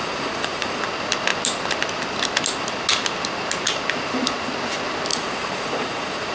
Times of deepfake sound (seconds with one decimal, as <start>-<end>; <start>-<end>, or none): 0.0-0.8; 5.1-6.3